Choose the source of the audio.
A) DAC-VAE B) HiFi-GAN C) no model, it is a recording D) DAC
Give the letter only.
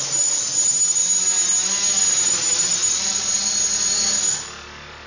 C